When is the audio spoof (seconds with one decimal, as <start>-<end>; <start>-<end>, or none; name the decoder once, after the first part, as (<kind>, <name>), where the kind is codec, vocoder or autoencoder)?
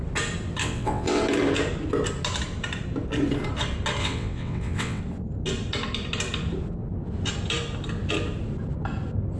0.6-1.2 (vocoder, WaveNeXt); 4.0-5.0